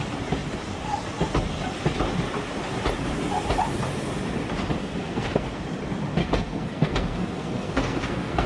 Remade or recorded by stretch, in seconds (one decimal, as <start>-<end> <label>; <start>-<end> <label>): 0.0-4.8 recorded; 4.8-5.6 remade; 5.6-6.2 recorded; 6.2-8.5 remade